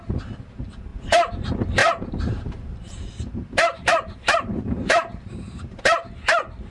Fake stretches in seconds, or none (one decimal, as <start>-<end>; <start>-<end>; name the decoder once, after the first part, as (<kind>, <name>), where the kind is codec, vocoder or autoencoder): 1.8-5.8 (vocoder, BigVGAN v2)